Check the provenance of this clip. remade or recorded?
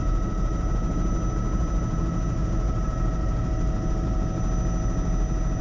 recorded